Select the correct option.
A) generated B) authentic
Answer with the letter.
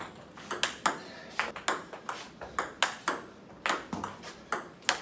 B